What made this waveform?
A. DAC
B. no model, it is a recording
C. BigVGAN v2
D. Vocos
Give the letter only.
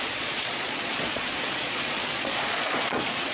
D